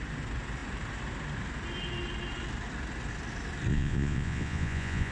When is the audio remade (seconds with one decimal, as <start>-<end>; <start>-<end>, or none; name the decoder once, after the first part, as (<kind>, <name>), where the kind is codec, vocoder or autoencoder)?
3.7-5.1 (vocoder, Vocos)